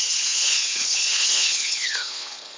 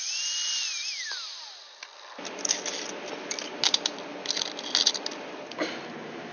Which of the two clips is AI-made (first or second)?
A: first